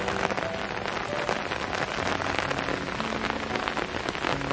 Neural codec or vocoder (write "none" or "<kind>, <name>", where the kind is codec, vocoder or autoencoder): none